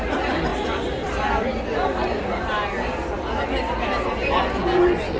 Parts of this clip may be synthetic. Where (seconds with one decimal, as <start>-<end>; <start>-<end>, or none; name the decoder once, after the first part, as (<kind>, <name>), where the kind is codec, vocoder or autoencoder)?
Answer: 4.2-5.2 (vocoder, Vocos)